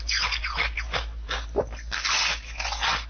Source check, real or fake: real